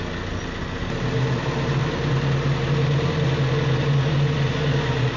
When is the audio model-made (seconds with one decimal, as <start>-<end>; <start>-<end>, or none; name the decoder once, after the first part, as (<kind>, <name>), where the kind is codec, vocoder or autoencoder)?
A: none

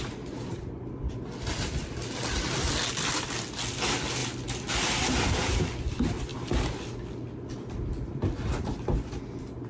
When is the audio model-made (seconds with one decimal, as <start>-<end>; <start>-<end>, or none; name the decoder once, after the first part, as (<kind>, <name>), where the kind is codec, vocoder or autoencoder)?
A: none

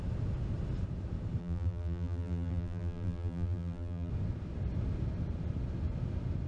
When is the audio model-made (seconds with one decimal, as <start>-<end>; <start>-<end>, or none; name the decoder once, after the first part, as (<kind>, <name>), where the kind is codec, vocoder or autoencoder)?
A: 1.4-4.1 (vocoder, BigVGAN v2)

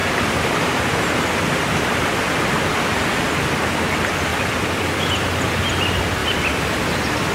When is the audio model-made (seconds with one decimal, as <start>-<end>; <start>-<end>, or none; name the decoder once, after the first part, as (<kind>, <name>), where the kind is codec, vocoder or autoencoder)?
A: 0.0-2.0 (vocoder, BigVGAN v2); 4.3-5.1; 6.2-7.3

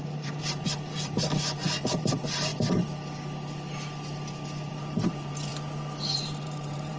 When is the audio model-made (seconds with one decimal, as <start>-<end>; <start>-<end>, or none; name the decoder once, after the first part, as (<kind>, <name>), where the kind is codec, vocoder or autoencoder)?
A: 0.0-2.5 (vocoder, BigVGAN v2); 4.7-5.5; 6.1-7.0

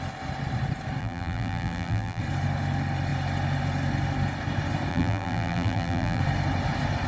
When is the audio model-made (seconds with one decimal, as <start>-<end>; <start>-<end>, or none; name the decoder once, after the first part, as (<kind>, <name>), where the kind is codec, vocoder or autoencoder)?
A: 1.0-2.2 (vocoder, BigVGAN v2); 4.9-6.2

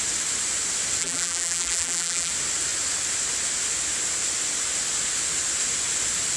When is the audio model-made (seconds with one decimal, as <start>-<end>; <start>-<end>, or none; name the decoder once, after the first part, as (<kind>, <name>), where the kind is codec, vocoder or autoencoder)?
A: 1.0-2.3 (vocoder, BigVGAN v2)

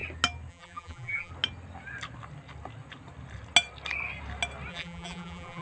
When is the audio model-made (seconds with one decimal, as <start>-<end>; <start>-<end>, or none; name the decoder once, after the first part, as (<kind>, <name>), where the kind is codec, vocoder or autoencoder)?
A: 0.5-1.3 (vocoder, BigVGAN v2); 4.7-5.6